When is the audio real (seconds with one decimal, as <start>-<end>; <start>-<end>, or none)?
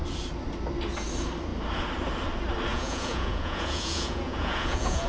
0.0-2.7